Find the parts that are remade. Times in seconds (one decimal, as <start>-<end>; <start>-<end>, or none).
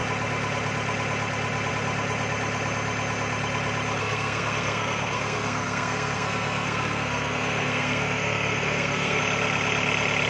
4.0-9.2